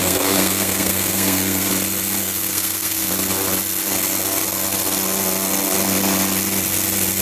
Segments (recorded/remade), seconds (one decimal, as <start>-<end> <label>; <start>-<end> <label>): 0.0-1.7 remade; 1.7-2.2 recorded; 2.2-3.1 remade; 3.1-7.2 recorded